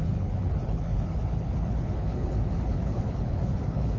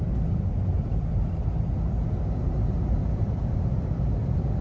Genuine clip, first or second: second